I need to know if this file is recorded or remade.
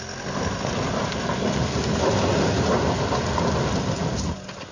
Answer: recorded